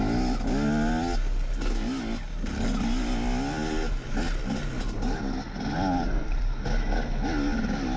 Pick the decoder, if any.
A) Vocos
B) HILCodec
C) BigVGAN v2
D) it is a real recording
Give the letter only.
D